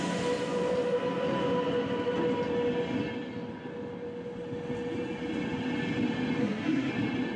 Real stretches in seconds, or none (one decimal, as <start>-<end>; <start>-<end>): 0.0-6.4; 6.9-7.4